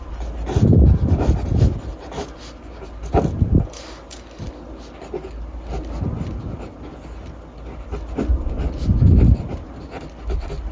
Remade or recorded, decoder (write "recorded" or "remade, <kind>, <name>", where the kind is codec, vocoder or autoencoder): recorded